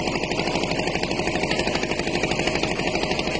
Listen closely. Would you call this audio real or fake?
real